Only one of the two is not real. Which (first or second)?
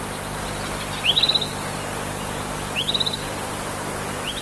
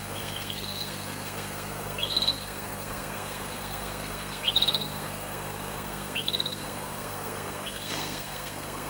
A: second